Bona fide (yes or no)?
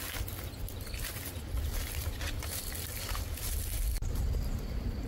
yes